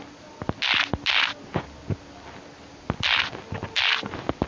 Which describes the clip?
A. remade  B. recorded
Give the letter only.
B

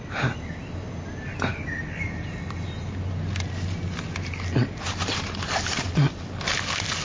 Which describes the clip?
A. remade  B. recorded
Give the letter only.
B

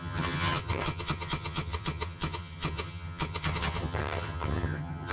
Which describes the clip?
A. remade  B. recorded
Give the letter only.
A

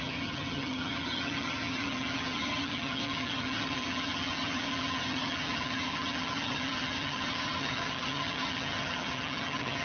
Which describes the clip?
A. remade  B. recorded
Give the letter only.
A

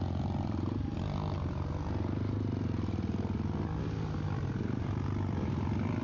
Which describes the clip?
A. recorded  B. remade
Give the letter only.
A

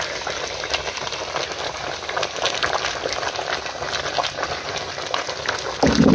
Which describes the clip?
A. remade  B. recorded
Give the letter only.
B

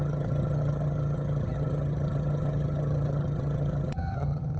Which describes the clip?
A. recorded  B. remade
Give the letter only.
B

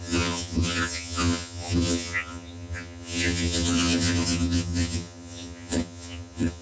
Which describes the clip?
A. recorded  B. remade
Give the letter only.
B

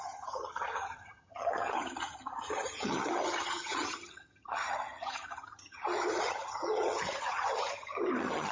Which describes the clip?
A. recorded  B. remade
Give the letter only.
B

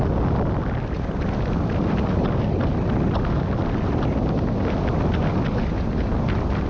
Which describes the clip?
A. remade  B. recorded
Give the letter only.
B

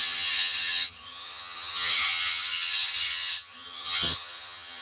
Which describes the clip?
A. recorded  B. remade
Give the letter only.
B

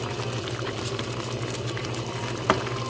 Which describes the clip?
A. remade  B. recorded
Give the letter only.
B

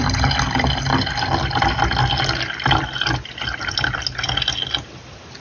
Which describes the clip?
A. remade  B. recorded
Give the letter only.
B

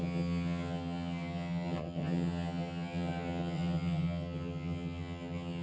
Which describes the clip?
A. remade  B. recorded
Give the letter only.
A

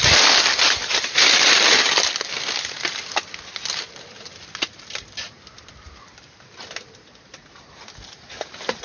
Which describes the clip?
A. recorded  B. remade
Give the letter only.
A